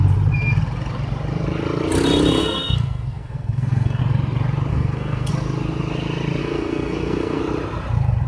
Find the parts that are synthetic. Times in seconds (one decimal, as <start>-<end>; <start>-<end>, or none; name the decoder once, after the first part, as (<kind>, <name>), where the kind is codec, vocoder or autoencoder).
2.4-4.0 (codec, SNAC); 4.7-5.3; 6.4-7.4